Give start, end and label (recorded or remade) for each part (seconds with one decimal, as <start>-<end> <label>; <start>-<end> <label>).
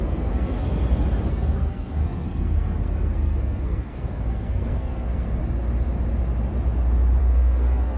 0.0-0.8 remade; 0.8-1.3 recorded; 1.3-5.4 remade; 5.4-7.2 recorded; 7.2-8.0 remade